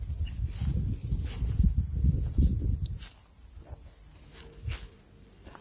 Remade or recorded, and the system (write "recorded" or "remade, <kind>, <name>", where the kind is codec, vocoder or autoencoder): recorded